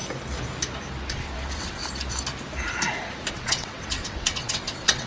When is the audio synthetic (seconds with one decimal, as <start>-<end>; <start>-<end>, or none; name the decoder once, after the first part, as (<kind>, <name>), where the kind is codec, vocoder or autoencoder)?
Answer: 1.1-1.8 (vocoder, WaveNeXt); 3.3-5.1